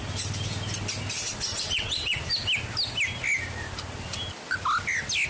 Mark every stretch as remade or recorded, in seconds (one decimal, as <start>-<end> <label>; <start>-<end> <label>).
0.0-1.5 recorded; 1.5-2.2 remade; 2.2-5.3 recorded